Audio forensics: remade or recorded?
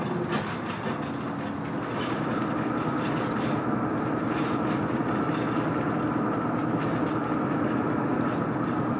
recorded